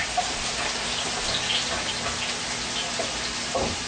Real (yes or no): yes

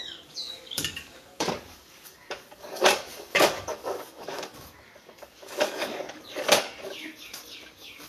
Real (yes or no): no